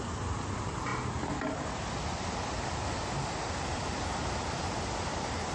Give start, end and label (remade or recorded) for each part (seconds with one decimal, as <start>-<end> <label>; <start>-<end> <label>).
0.0-5.5 recorded